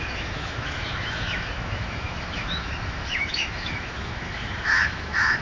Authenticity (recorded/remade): remade